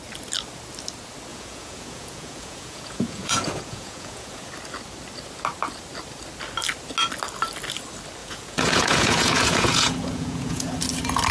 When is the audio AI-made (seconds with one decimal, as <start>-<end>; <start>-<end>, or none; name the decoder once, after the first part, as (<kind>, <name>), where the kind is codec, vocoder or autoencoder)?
1.3-4.5 (vocoder, Vocos); 8.2-10.7